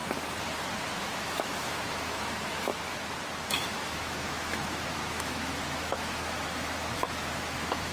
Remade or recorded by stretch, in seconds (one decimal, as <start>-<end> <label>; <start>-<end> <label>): 0.0-1.0 recorded; 1.0-2.7 remade; 2.7-3.5 recorded; 3.5-7.9 remade